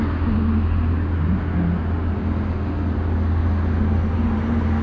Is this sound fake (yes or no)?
no